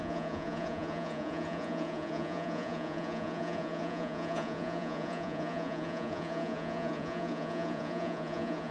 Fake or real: fake